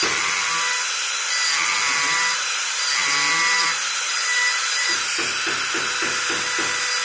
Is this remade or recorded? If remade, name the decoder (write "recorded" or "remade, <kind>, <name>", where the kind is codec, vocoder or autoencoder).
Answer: recorded